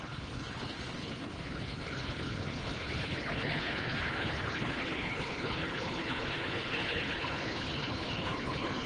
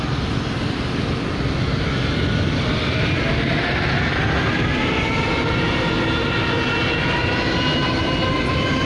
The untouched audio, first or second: second